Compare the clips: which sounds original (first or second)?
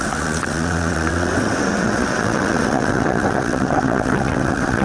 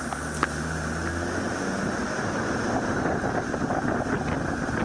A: second